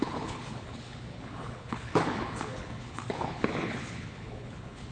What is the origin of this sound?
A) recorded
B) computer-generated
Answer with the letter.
B